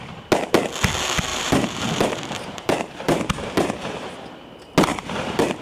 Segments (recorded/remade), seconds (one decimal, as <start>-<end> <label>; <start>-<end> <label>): 0.0-1.3 recorded; 1.3-4.1 remade; 4.1-4.9 recorded; 4.9-5.6 remade